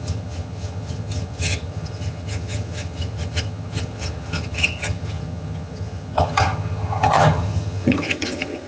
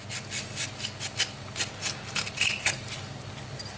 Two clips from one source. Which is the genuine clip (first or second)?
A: second